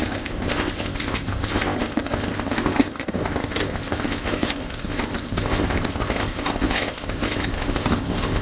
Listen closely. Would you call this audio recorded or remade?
remade